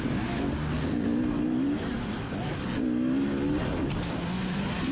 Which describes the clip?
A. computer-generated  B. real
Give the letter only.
B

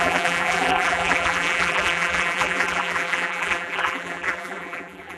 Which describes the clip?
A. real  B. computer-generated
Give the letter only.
B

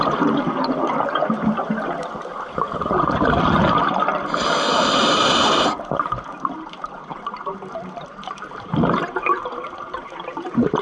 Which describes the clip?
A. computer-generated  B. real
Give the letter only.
A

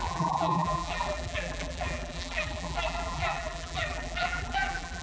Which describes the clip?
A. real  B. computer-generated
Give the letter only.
B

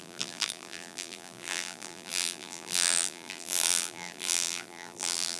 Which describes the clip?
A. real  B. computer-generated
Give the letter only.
B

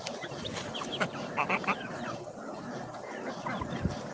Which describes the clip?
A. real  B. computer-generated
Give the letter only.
B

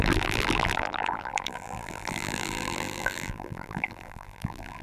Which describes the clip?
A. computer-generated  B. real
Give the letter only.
A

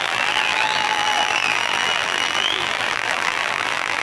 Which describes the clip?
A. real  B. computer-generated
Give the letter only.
B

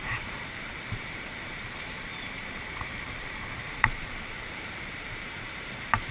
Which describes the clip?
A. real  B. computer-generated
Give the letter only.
B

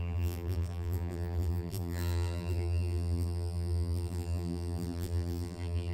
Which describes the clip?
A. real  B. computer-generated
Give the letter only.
B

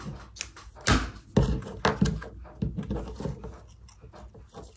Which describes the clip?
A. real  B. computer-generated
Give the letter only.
A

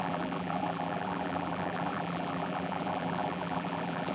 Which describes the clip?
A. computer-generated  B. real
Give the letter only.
A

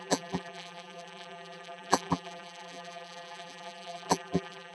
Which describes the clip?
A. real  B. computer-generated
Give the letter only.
B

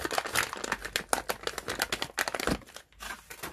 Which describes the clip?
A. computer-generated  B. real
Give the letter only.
B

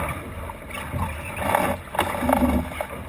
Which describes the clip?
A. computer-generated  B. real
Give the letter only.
B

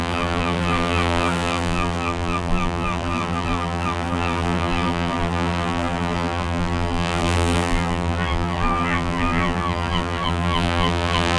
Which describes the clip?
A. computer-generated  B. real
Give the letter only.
A